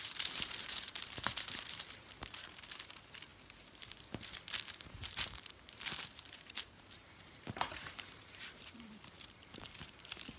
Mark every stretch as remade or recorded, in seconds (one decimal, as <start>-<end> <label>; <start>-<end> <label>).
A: 0.0-3.3 remade; 3.3-4.7 recorded; 4.7-10.4 remade

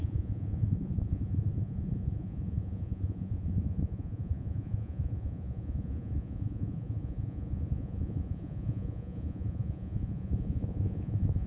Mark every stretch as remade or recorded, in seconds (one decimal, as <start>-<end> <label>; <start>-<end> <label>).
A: 0.0-11.5 remade